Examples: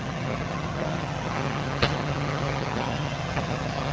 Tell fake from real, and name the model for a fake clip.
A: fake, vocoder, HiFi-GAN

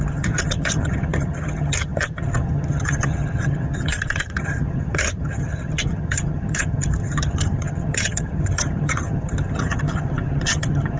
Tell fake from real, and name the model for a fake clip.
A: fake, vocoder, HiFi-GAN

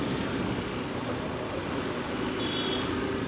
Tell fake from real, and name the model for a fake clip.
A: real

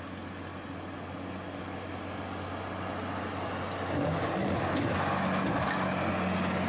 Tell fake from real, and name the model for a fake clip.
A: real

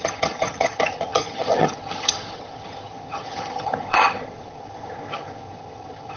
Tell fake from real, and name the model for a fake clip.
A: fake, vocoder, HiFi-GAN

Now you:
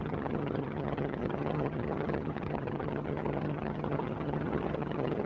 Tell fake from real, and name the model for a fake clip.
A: fake, vocoder, HiFi-GAN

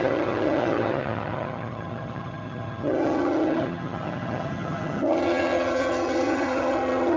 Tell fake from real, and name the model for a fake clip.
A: fake, vocoder, HiFi-GAN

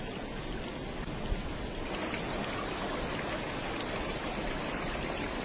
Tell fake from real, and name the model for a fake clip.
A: real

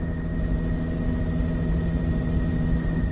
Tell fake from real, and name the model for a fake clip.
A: real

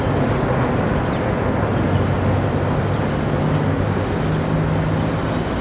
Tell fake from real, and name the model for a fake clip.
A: real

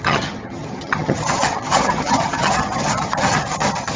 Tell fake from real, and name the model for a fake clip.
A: fake, vocoder, HiFi-GAN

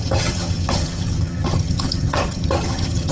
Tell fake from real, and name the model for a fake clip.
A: fake, vocoder, HiFi-GAN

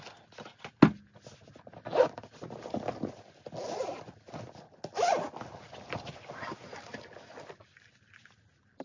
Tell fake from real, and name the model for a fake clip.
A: real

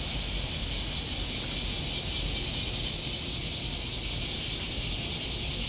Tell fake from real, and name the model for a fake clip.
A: real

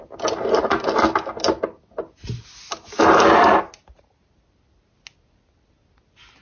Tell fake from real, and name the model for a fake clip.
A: real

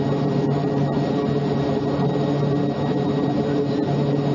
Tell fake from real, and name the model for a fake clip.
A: real